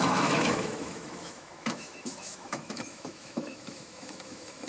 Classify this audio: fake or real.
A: fake